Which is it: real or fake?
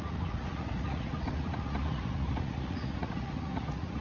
fake